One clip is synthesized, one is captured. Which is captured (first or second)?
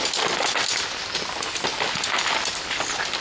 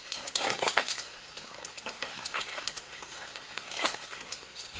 first